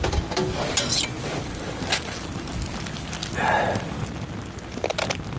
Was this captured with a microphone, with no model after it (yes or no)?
yes